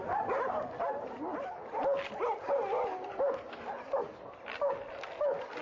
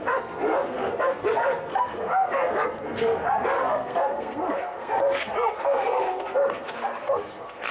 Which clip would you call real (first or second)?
first